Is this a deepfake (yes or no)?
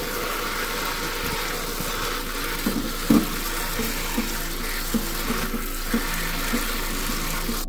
no